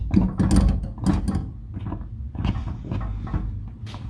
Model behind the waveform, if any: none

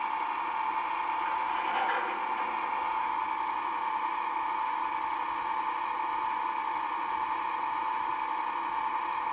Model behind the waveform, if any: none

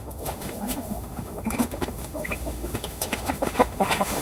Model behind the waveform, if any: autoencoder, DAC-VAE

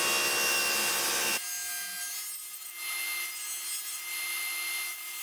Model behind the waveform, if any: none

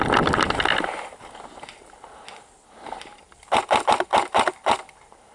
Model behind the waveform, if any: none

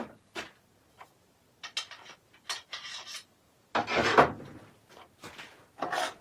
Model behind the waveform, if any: none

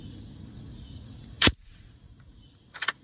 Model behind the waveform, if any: vocoder, Vocos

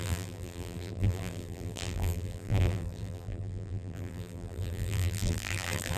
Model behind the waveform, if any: vocoder, BigVGAN v2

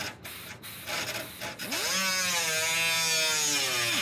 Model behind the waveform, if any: none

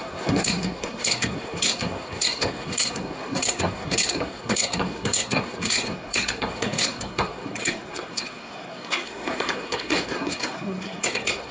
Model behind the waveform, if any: codec, SNAC